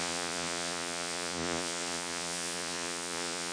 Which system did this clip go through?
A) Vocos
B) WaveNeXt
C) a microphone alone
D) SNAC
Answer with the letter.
A